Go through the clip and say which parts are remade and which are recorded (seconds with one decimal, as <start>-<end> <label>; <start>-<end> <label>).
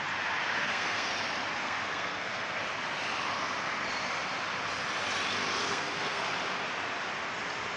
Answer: 0.0-0.6 recorded; 0.6-1.1 remade; 1.1-1.6 recorded; 1.6-2.6 remade; 2.6-5.6 recorded; 5.6-6.2 remade; 6.2-7.8 recorded